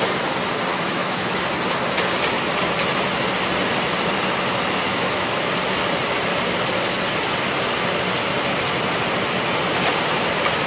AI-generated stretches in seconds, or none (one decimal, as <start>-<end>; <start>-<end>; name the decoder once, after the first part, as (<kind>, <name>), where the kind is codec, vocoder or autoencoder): 0.7-1.4 (autoencoder, DAC-VAE); 4.9-5.5